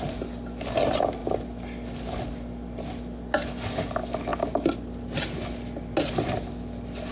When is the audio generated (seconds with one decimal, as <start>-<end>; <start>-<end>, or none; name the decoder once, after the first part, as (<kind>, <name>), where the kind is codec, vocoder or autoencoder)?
none